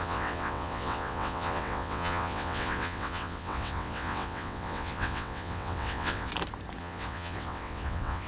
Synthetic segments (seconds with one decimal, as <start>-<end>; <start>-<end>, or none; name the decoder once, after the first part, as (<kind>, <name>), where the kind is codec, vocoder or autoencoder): 0.0-6.3 (vocoder, WaveNeXt); 6.8-8.3